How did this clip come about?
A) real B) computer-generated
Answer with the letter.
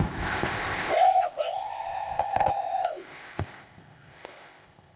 B